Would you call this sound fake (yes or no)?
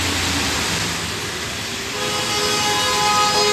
no